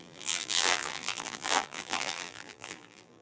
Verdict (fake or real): fake